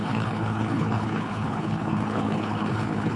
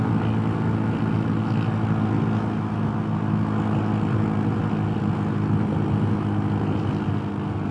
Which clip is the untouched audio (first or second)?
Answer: second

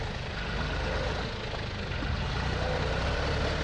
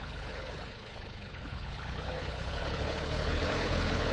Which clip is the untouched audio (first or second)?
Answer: first